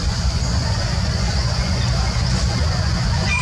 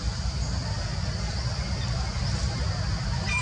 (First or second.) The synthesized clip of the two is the first